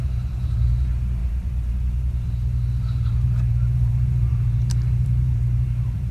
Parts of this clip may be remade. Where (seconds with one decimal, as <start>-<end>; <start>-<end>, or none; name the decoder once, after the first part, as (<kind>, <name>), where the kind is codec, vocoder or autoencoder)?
0.0-6.1 (vocoder, BigVGAN v2)